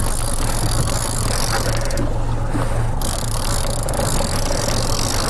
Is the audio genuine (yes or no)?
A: yes